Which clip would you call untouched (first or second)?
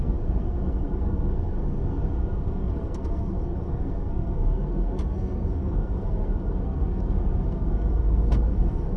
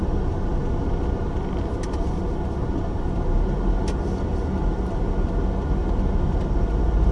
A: second